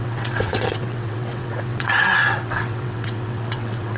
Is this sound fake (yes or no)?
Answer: yes